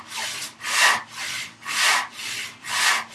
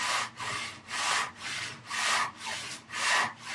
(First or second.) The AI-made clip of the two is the second